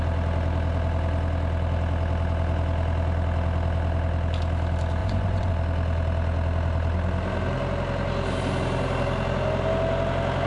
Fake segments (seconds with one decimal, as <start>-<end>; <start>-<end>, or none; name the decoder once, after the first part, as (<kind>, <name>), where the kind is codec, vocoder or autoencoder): 5.0-5.5 (vocoder, Vocos)